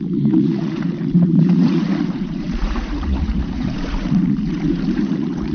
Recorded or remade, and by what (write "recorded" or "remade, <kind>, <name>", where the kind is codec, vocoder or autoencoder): remade, vocoder, Vocos